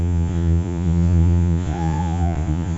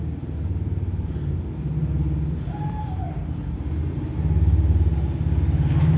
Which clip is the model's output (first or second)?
first